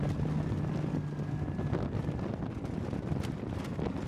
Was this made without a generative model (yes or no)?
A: yes